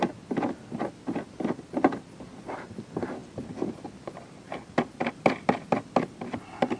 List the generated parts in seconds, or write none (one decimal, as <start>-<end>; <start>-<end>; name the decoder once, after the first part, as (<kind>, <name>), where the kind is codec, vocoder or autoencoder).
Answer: none